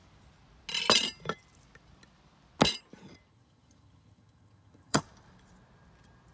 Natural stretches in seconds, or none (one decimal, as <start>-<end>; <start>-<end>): 0.0-3.3; 5.0-6.3